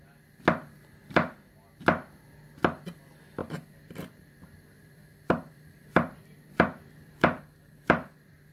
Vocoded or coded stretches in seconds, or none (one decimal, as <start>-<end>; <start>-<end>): 1.0-1.6; 3.4-8.5